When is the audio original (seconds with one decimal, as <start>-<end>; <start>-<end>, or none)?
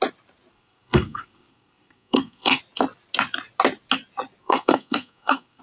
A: 0.0-0.5; 2.6-4.4